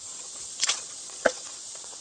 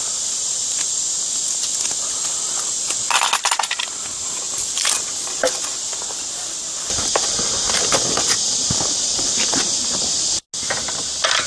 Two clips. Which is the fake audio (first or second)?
first